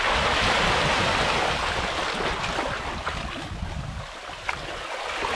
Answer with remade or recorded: recorded